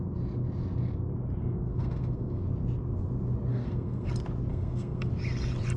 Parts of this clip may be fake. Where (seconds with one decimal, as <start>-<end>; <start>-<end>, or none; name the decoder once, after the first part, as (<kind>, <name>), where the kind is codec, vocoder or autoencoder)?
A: 1.4-2.4 (codec, SNAC); 3.5-4.1; 4.5-5.1